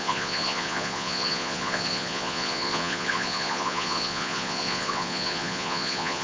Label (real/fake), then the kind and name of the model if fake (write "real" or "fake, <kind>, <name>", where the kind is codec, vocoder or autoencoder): fake, vocoder, Vocos